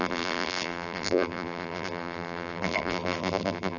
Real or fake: fake